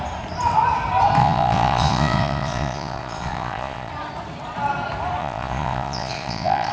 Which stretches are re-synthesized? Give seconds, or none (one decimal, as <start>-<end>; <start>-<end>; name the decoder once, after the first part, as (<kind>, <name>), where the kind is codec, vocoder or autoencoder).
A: 1.2-3.9 (vocoder, Vocos); 5.2-6.7